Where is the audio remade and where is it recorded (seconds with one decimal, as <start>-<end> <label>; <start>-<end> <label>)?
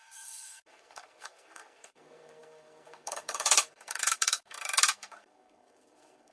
0.0-6.3 remade